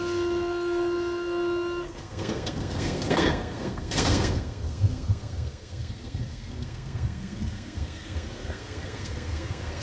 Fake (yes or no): yes